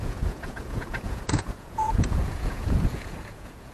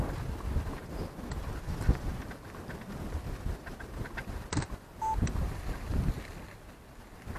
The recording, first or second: second